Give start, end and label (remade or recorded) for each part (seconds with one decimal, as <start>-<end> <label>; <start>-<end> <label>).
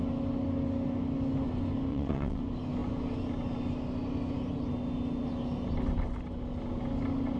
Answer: 0.0-1.9 recorded; 1.9-2.4 remade; 2.4-7.4 recorded